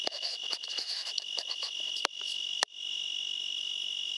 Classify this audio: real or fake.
fake